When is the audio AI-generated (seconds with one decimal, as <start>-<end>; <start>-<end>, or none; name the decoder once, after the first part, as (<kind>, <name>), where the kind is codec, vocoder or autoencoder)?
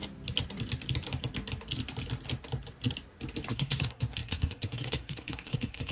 3.5-5.9 (codec, SNAC)